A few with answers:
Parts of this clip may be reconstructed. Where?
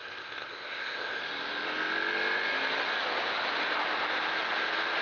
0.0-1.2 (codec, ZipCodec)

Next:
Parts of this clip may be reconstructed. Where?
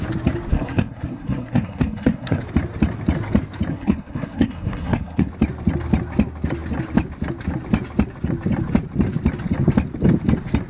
0.5-2.4 (codec, SNAC); 3.7-5.3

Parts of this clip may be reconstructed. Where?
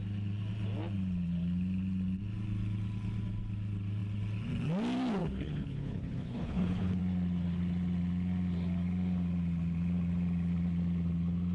5.2-7.0 (codec, HILCodec)